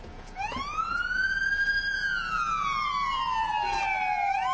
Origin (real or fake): fake